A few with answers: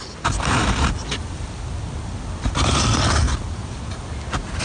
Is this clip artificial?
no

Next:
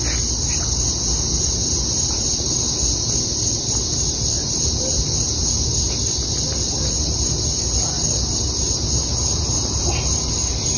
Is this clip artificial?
no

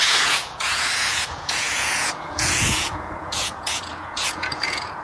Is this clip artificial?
yes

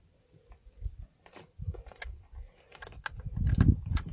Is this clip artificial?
no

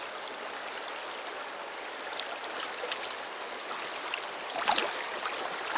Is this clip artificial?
no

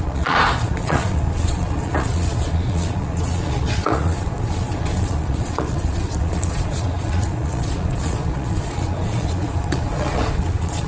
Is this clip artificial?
yes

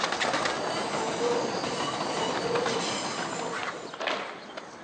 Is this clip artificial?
no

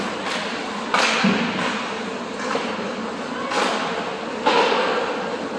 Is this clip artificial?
no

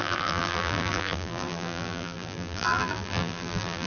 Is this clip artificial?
yes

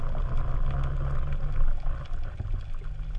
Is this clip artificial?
no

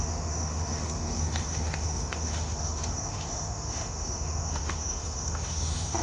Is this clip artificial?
yes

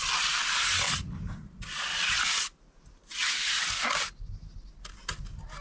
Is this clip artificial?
no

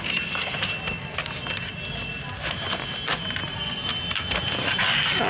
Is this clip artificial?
no